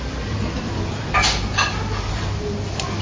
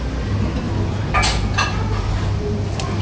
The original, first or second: second